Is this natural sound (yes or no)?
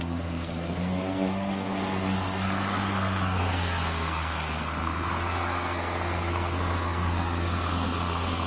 no